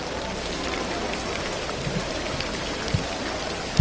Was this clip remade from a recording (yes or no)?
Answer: yes